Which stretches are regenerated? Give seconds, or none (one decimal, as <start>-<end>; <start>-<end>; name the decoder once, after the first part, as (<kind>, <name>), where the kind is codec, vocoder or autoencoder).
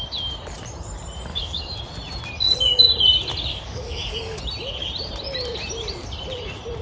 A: 1.3-1.8 (codec, DAC); 3.5-4.4